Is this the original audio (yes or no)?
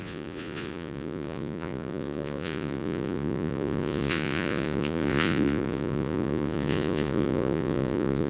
no